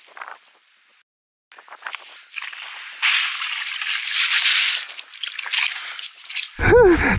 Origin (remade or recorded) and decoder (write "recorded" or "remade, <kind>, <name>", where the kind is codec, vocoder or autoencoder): recorded